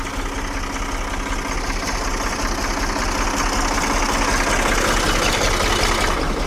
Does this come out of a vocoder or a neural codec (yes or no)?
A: no